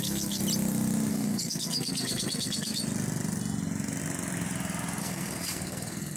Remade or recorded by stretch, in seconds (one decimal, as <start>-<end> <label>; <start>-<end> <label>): 0.0-0.4 remade; 0.4-1.1 recorded; 1.1-2.8 remade; 2.8-5.0 recorded; 5.0-6.2 remade